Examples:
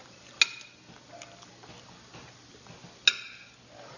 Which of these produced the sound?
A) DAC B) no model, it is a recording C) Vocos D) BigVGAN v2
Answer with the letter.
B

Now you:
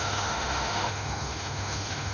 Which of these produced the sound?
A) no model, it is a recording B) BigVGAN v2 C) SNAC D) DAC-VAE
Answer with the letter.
D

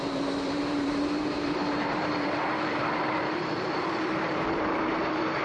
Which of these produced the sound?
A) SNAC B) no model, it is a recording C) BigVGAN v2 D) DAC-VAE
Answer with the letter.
C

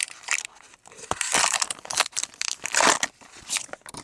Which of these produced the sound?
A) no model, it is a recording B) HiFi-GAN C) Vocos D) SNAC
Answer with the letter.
A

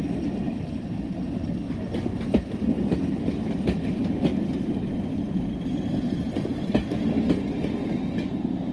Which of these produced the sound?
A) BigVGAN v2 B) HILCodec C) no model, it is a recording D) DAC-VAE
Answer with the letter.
C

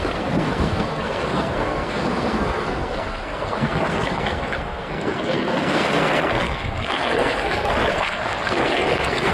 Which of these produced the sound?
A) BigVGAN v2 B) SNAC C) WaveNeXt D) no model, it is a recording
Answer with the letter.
B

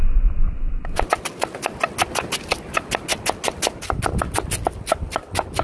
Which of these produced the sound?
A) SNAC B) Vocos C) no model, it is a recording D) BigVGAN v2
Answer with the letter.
C